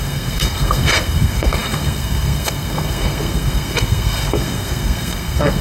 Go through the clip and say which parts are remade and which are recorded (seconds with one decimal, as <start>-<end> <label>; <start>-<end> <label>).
0.0-5.6 remade